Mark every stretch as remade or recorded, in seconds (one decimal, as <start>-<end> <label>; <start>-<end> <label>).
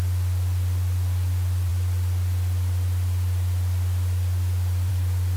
0.0-5.4 recorded